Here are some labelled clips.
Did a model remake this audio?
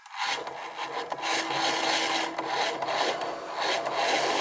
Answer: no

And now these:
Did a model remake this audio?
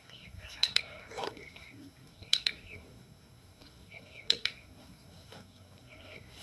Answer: yes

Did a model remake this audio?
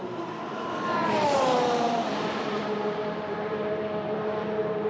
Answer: yes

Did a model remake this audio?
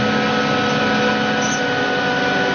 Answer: no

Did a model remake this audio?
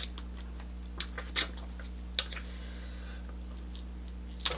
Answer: no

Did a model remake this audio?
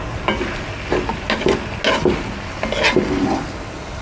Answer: no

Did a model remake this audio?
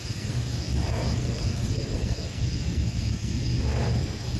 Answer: yes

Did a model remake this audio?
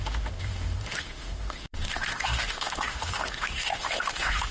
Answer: yes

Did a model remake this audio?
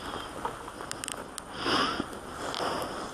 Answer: no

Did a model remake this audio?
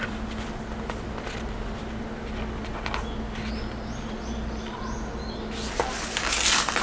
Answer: no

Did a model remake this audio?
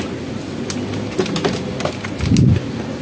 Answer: no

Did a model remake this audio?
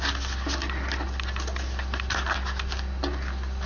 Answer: no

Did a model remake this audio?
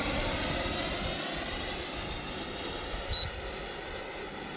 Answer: no